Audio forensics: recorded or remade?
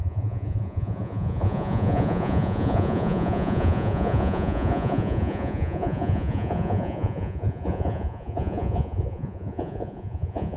remade